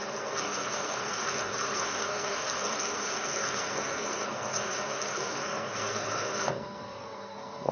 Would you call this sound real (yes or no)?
no